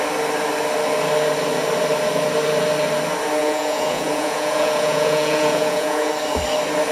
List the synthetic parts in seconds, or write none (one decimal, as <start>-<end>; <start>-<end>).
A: 3.4-6.1